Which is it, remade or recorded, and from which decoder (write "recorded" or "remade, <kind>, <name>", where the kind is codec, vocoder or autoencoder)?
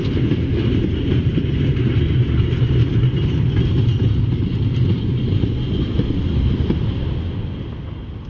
recorded